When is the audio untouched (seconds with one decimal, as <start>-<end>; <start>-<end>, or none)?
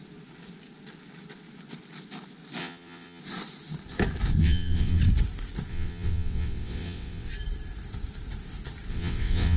0.0-2.6; 3.2-4.4; 5.0-5.7; 7.3-8.9